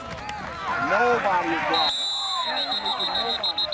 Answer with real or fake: real